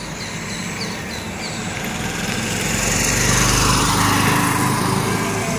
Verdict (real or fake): real